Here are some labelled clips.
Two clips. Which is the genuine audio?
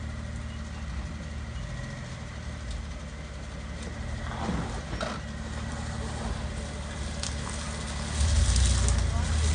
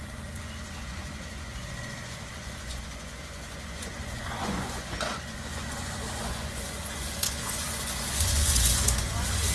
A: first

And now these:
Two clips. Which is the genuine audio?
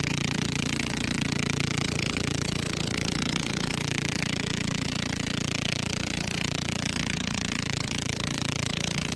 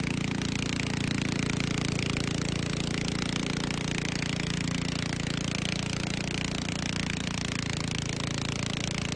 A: second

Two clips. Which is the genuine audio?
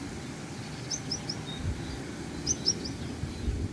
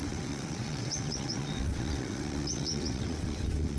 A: first